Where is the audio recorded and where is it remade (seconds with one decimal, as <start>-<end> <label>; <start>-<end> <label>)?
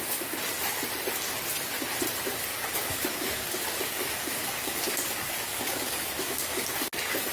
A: 0.0-2.5 recorded; 2.5-7.3 remade